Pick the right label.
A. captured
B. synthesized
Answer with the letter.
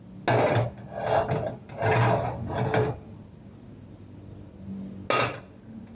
A